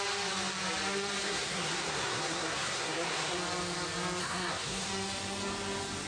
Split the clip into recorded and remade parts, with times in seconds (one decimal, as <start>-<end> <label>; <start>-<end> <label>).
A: 0.0-1.2 recorded; 1.2-3.4 remade; 3.4-4.2 recorded; 4.2-4.9 remade; 4.9-6.1 recorded